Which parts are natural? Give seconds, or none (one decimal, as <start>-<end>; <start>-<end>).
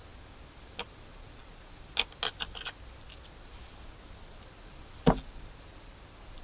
0.0-6.4